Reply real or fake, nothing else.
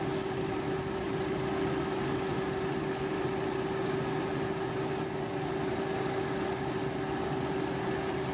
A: real